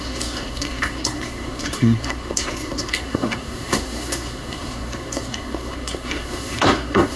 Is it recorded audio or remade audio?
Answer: remade